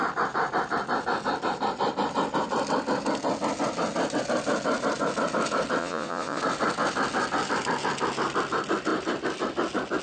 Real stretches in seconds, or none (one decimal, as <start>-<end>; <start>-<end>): 0.0-5.8; 6.4-10.0